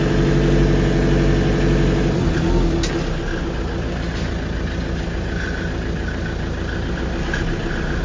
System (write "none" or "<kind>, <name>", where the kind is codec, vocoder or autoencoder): none